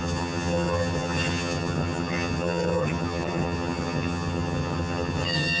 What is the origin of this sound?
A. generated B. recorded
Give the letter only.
A